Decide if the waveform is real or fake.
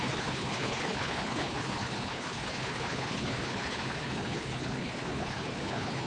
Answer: fake